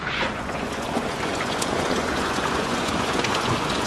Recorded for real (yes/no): no